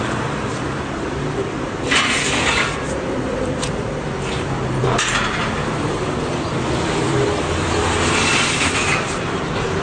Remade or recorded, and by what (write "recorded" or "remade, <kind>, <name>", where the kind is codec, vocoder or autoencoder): remade, vocoder, BigVGAN v2